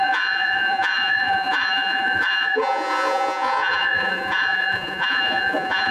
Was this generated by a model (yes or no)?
yes